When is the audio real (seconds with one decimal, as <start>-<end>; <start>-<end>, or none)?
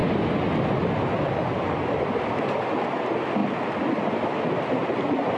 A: 0.0-5.4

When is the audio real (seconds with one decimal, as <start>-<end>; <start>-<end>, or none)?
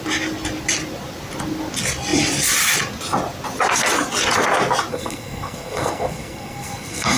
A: 0.0-4.9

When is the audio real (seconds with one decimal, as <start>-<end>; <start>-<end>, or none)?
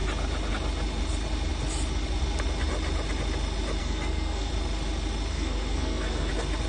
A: 0.0-3.8; 4.5-5.3; 6.3-6.7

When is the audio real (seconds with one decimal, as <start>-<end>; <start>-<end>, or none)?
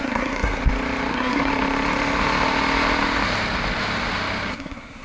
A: 0.6-1.1; 1.5-4.5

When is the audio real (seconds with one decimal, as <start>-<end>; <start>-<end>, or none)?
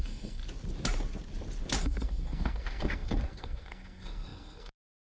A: 0.4-1.8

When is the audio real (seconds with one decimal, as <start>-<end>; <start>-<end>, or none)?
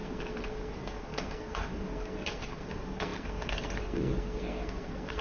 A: none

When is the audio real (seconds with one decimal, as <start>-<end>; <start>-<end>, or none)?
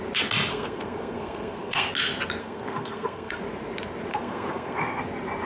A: 0.0-0.5; 1.9-2.4; 3.4-4.1; 5.0-5.4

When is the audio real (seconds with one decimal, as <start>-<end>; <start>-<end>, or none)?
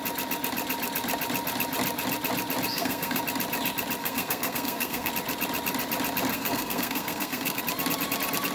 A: 0.0-2.7; 3.2-4.0; 5.1-6.3; 7.6-8.5